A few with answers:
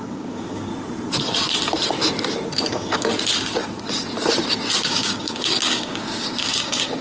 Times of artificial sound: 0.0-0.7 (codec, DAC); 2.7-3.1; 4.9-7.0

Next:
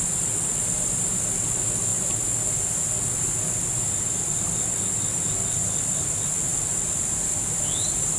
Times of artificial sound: none